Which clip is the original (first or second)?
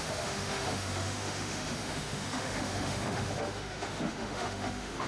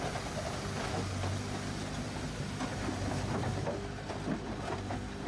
second